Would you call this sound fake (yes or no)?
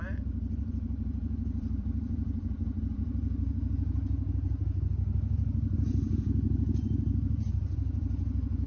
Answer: yes